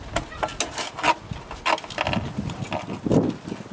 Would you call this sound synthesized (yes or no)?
no